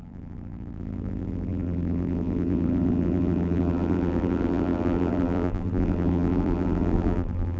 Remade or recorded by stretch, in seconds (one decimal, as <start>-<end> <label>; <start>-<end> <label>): 0.0-7.6 remade